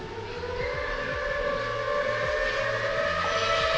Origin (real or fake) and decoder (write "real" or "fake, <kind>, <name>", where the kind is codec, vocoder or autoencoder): real